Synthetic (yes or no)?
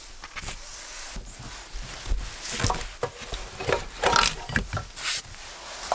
no